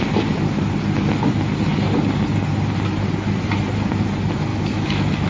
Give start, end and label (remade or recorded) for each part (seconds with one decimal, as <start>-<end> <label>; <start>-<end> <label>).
0.0-4.5 recorded; 4.5-5.3 remade

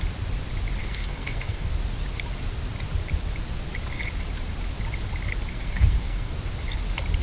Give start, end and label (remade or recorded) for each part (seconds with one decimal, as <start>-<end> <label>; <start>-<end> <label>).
0.0-0.8 recorded; 0.8-1.7 remade; 1.7-5.5 recorded; 5.5-6.3 remade; 6.3-7.2 recorded

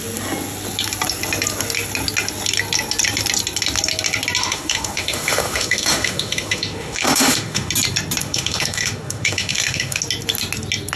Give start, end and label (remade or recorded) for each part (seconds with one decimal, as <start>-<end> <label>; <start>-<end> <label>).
0.0-4.4 recorded; 4.4-7.7 remade; 7.7-8.2 recorded; 8.2-10.0 remade; 10.0-11.0 recorded

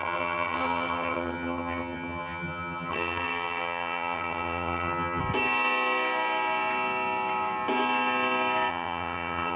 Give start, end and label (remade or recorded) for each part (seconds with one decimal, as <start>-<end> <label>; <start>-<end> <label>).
0.0-5.2 remade; 5.2-8.7 recorded; 8.7-9.6 remade

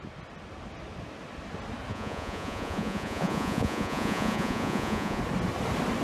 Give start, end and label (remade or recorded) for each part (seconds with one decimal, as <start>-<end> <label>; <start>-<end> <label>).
0.0-1.9 recorded; 1.9-5.2 remade; 5.2-6.0 recorded

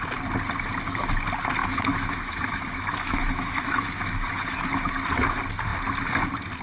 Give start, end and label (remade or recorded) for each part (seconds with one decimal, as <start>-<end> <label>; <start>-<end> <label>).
0.0-1.6 recorded; 1.6-4.9 remade; 4.9-6.6 recorded